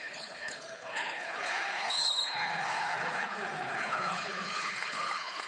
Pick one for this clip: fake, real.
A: fake